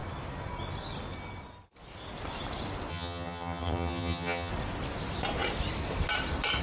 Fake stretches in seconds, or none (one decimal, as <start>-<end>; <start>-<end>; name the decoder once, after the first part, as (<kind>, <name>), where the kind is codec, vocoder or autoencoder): 2.9-4.5 (vocoder, HiFi-GAN)